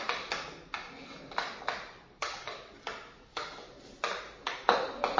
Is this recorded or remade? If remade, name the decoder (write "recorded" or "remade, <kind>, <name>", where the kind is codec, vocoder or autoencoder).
recorded